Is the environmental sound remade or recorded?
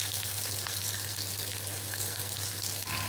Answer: remade